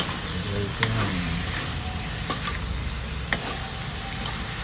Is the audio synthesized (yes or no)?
no